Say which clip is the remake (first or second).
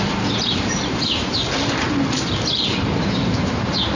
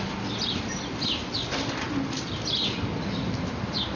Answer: first